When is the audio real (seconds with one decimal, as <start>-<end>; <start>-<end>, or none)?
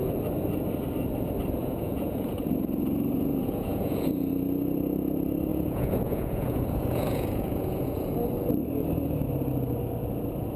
0.0-1.6; 4.3-5.5; 8.1-10.6